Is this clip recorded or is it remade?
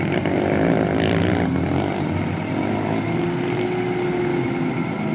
recorded